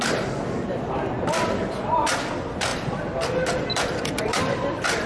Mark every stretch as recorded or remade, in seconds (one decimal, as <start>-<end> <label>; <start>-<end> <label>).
0.0-2.7 recorded; 2.7-5.1 remade